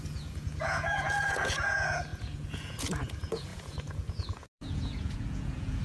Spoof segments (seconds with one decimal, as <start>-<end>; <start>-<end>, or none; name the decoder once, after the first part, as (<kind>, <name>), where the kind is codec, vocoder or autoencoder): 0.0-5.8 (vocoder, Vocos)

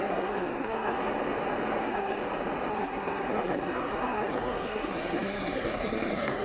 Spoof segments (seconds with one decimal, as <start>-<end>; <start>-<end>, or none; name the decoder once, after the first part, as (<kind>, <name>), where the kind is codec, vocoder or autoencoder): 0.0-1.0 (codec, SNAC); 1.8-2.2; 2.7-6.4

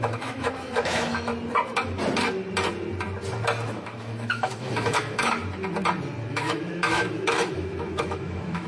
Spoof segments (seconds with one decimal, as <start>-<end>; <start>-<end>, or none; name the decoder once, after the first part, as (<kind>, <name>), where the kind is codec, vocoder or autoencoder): 0.0-1.3 (autoencoder, DAC-VAE); 3.7-5.4; 6.3-8.7